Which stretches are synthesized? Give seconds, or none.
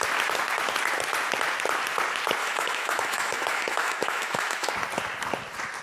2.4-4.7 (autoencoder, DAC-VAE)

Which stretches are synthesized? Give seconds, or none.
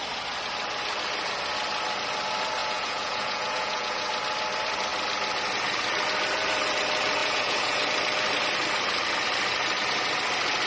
2.6-4.1 (vocoder, Vocos); 7.2-7.8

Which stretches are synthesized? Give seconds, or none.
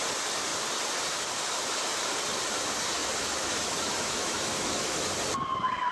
3.0-5.1 (autoencoder, DAC-VAE)